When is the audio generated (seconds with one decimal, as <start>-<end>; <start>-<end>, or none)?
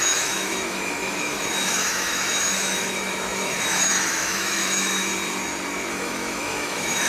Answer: 0.0-5.1; 5.9-7.1